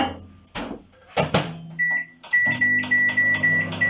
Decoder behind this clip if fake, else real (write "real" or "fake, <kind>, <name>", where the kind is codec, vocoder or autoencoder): real